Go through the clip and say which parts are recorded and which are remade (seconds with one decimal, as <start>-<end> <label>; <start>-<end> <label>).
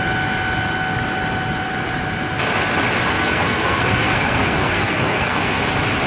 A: 0.0-3.1 recorded; 3.1-5.6 remade; 5.6-6.1 recorded